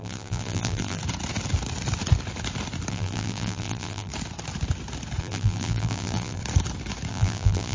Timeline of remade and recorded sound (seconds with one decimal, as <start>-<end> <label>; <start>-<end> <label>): 0.0-1.0 remade; 1.0-2.9 recorded; 2.9-4.1 remade; 4.1-5.2 recorded; 5.2-6.4 remade; 6.4-7.1 recorded; 7.1-7.7 remade

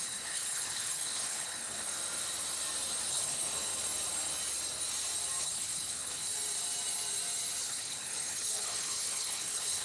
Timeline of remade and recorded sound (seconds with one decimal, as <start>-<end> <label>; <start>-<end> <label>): 0.0-1.9 remade; 1.9-3.1 recorded; 3.1-3.7 remade; 3.7-5.4 recorded; 5.4-6.3 remade; 6.3-7.6 recorded; 7.6-9.8 remade

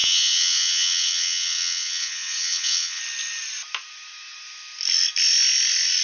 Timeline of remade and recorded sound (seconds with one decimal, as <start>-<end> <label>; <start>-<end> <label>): 0.0-3.0 remade; 3.0-6.0 recorded

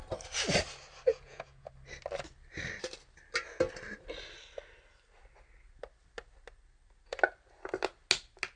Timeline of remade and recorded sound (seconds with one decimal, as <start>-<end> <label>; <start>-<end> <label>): 0.0-1.1 recorded; 1.1-1.7 remade; 1.7-8.6 recorded

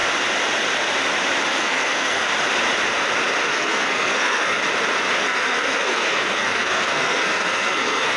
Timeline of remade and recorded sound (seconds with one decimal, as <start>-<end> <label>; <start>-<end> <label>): 0.0-1.5 recorded; 1.5-2.3 remade; 2.3-3.5 recorded; 3.5-4.6 remade; 4.6-5.2 recorded; 5.2-8.2 remade

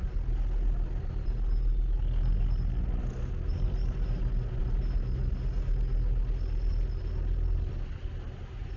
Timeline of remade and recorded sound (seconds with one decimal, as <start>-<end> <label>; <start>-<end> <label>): 0.0-8.8 recorded